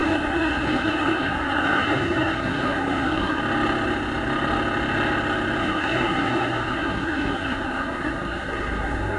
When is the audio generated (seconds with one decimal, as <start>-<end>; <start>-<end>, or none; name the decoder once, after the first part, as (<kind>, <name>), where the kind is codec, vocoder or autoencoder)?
0.0-3.4 (codec, SNAC); 5.6-9.2